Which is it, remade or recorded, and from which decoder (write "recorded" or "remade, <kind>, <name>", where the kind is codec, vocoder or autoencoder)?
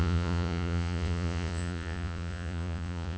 remade, vocoder, Vocos